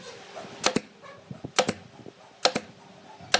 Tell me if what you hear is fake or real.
real